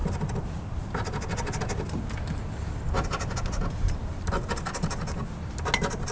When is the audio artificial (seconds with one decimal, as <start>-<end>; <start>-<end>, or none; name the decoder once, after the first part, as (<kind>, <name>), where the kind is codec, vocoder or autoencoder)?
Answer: none

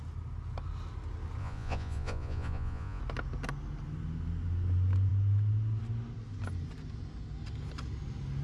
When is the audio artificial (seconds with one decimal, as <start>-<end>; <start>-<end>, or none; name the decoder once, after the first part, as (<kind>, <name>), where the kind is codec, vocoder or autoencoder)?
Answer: 1.4-3.0 (vocoder, Vocos)

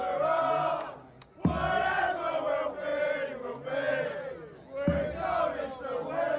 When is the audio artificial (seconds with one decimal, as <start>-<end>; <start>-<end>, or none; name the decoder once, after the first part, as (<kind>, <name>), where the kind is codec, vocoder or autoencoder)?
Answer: none

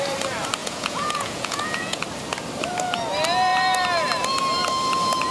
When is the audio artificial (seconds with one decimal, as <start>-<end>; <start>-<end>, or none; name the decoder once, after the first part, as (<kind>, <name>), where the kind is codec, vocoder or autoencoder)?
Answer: 0.6-2.0 (vocoder, Vocos)

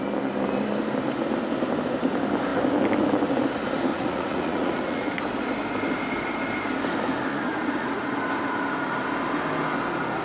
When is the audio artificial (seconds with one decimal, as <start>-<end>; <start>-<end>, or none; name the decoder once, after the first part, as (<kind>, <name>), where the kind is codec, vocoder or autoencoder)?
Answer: 3.9-5.2 (vocoder, Vocos); 7.3-8.1

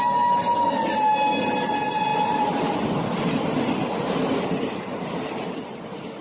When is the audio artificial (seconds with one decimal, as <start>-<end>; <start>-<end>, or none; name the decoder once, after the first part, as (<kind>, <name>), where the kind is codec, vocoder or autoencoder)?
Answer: none

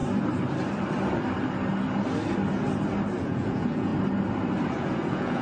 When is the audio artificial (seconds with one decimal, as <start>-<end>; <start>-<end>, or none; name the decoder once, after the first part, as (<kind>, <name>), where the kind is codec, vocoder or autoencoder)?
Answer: 3.2-3.9 (vocoder, Vocos); 4.7-5.4

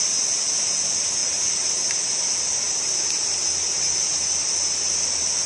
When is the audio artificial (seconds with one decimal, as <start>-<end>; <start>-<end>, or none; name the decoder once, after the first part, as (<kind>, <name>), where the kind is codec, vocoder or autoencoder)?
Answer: none